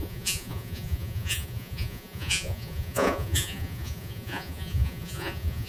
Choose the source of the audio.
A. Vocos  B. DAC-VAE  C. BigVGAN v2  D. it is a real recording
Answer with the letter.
A